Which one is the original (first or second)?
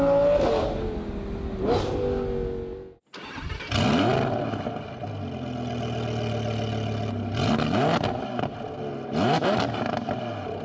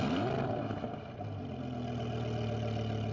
first